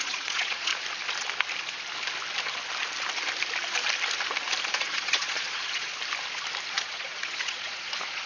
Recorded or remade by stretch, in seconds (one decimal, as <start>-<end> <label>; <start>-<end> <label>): 0.0-0.7 remade; 0.7-4.7 recorded; 4.7-5.9 remade; 5.9-6.7 recorded; 6.7-8.3 remade